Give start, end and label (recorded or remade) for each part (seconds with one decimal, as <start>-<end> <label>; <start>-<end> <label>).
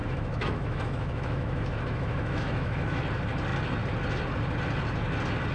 0.0-3.0 remade; 3.0-5.5 recorded